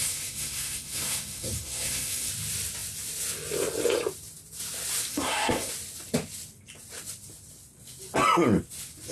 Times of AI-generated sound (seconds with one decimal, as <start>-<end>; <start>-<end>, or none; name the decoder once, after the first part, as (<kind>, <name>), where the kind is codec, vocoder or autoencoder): 0.0-2.3 (codec, SNAC); 5.1-5.7